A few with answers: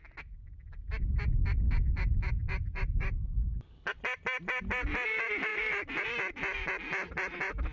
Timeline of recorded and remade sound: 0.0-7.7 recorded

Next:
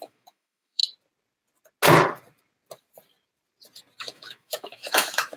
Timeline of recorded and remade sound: 0.0-0.8 remade; 0.8-4.0 recorded; 4.0-5.4 remade

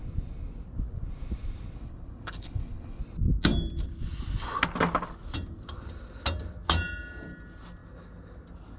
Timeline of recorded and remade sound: 0.0-1.8 recorded; 1.8-3.0 remade; 3.0-8.8 recorded

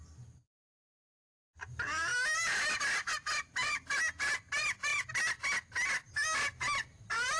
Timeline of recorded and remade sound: 0.0-3.6 recorded; 3.6-4.3 remade; 4.3-7.4 recorded

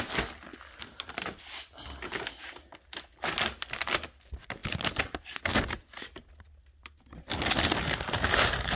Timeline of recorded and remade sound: 0.0-8.8 recorded

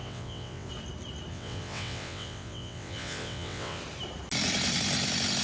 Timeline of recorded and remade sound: 0.0-0.7 remade; 0.7-1.3 recorded; 1.3-3.8 remade; 3.8-5.4 recorded